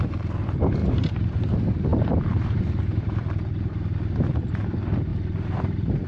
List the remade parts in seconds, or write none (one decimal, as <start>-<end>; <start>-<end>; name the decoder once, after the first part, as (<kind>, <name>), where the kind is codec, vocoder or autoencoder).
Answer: 0.8-1.5 (vocoder, BigVGAN v2); 1.9-2.8; 5.1-6.1